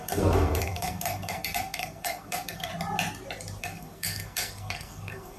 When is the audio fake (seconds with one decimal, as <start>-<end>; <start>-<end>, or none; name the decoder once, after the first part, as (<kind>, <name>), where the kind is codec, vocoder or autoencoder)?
0.0-2.7 (codec, SNAC); 3.6-5.4